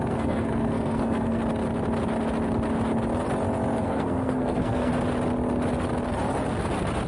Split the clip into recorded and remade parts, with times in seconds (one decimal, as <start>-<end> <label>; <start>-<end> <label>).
0.0-1.4 remade; 1.4-3.8 recorded; 3.8-4.9 remade; 4.9-7.1 recorded